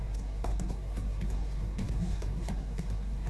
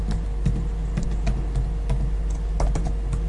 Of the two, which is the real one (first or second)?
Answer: second